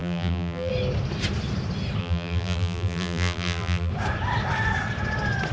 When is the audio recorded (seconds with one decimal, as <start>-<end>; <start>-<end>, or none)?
0.7-2.0; 3.9-5.5